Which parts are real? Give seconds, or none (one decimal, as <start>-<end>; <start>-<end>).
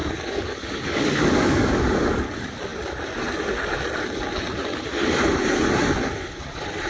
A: 2.2-6.9